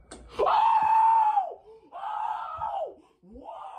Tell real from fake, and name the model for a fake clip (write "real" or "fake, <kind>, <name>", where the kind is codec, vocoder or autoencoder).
fake, vocoder, BigVGAN v2